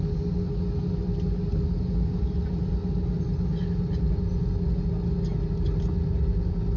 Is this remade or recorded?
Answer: recorded